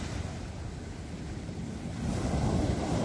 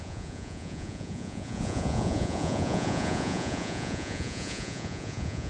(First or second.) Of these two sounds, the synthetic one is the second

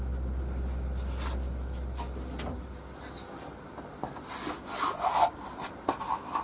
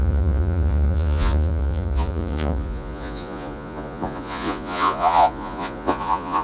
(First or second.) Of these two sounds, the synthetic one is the second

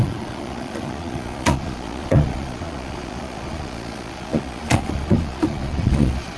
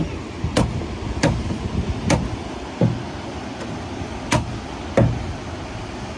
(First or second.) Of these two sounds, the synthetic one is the first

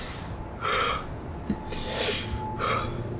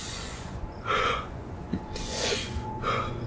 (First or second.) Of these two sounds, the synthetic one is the second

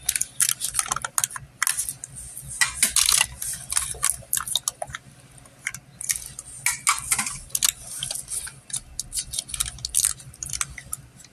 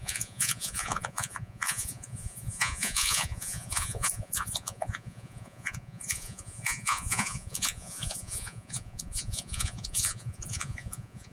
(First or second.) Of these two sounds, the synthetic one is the second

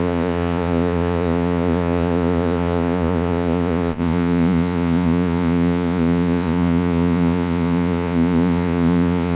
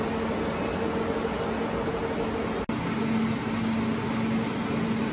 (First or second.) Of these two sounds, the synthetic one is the first